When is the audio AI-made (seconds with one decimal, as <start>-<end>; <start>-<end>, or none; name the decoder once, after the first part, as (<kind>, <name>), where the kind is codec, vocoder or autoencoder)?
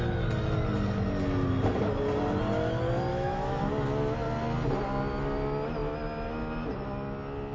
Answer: 3.1-3.6 (autoencoder, DAC-VAE)